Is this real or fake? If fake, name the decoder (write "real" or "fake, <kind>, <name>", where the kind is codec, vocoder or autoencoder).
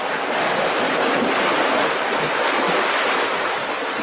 real